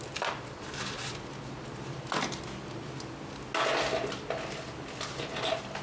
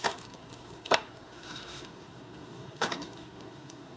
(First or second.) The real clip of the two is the first